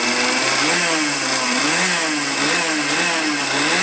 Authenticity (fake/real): real